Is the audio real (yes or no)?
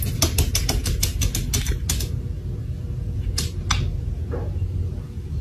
yes